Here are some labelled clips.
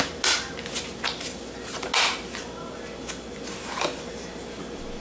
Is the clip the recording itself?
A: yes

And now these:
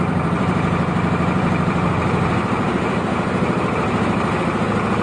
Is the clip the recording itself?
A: no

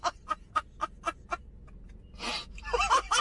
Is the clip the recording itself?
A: yes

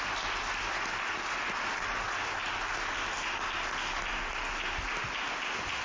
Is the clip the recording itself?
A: yes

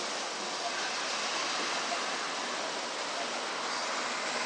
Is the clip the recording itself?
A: yes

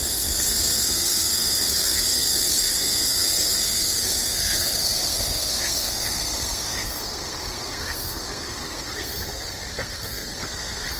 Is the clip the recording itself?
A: no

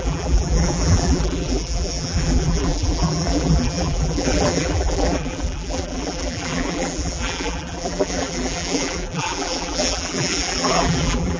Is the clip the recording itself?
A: no